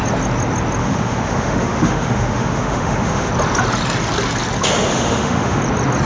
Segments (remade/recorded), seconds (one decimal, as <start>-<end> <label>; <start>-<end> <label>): 0.0-0.8 recorded; 0.8-3.3 remade; 3.3-4.9 recorded; 4.9-5.6 remade; 5.6-6.0 recorded